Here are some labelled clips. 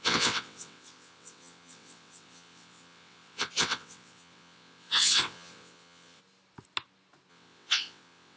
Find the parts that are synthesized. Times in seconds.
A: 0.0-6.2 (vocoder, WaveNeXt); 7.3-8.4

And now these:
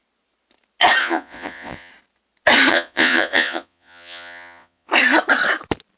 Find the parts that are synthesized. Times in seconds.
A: 1.0-1.9 (vocoder, Vocos); 2.7-4.9